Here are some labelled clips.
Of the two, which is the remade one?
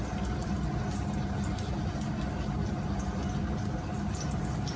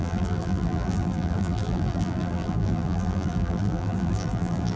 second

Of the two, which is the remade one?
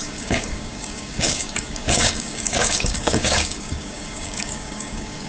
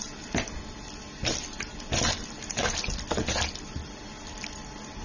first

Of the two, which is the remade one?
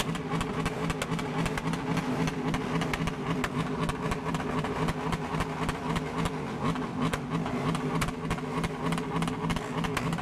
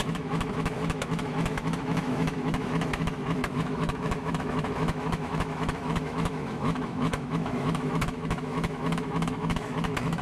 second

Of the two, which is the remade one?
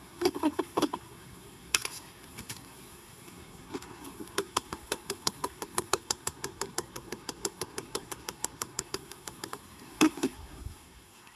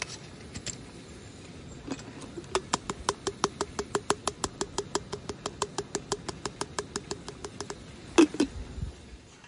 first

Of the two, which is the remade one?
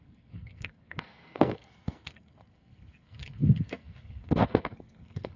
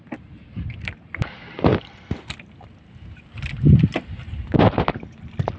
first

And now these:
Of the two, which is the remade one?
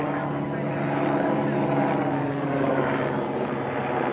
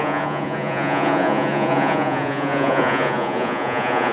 second